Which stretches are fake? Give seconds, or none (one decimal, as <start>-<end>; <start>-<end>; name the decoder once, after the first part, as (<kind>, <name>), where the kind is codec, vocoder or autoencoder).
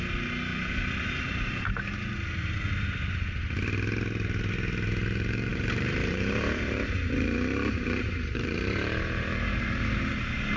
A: 0.5-1.6 (vocoder, BigVGAN v2); 5.5-10.1